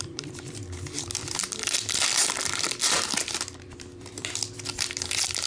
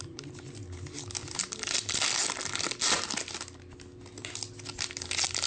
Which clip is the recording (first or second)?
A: second